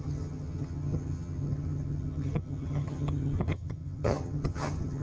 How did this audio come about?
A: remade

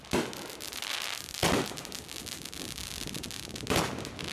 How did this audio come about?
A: recorded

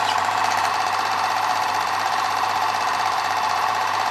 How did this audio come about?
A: remade